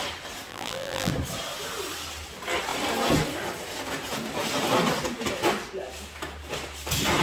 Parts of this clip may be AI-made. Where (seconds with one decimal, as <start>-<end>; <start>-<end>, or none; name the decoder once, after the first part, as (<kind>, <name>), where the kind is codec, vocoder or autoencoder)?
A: 0.5-1.1 (vocoder, BigVGAN v2)